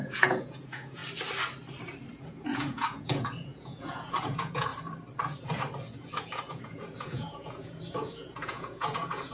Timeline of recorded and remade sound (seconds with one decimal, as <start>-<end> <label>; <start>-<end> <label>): 0.0-1.0 remade; 1.0-2.3 recorded; 2.3-4.7 remade; 4.7-6.2 recorded; 6.2-9.3 remade